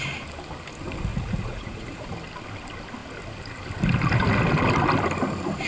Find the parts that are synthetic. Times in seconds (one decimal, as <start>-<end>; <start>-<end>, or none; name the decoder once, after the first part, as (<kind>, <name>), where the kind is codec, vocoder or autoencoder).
1.1-2.1 (vocoder, Vocos)